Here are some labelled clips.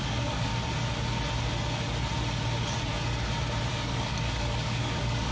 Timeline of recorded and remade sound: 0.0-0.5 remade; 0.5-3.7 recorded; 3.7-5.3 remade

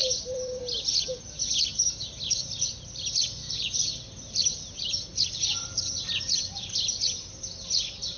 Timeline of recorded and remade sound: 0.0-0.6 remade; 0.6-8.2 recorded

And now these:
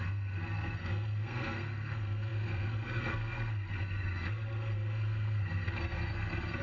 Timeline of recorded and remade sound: 0.0-6.6 remade

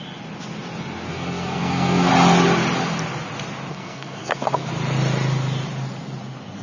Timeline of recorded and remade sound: 0.0-1.1 recorded; 1.1-2.1 remade; 2.1-3.7 recorded; 3.7-4.7 remade; 4.7-6.6 recorded